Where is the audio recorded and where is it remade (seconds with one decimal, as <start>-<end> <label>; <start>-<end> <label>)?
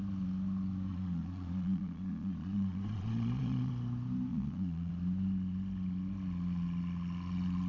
0.0-0.9 recorded; 0.9-3.7 remade; 3.7-4.3 recorded; 4.3-4.9 remade; 4.9-7.7 recorded